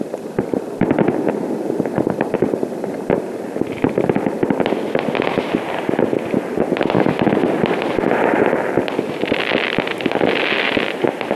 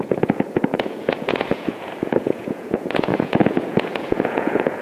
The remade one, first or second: second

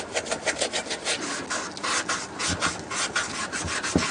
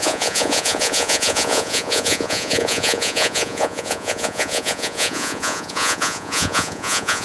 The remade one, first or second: second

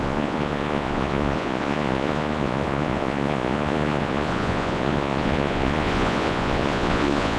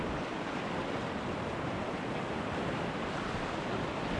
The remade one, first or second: first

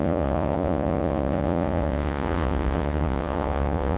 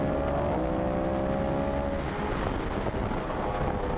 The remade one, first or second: first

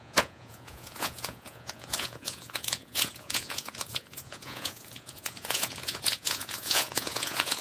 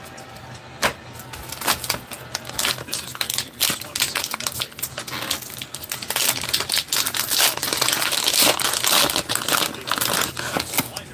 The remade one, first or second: first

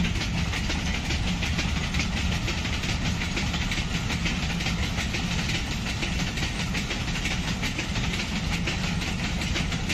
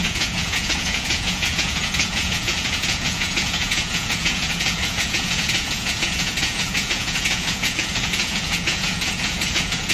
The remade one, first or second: second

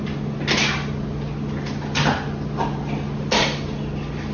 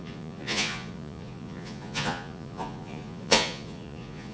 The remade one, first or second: second